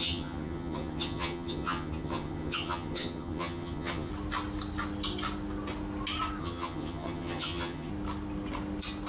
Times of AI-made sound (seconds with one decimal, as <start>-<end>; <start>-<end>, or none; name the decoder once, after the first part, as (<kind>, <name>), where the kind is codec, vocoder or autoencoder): 0.0-4.1 (vocoder, HiFi-GAN); 6.4-7.9